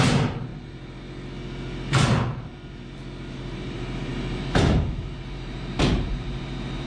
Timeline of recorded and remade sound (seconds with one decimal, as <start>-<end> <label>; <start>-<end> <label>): 0.0-0.5 remade; 0.5-3.3 recorded; 3.3-6.9 remade